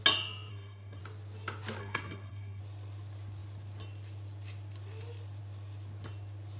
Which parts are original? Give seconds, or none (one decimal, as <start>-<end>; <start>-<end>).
0.0-0.5; 1.0-1.8; 2.6-6.6